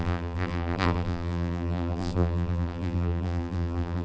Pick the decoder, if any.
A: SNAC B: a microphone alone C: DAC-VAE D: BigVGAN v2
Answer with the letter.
D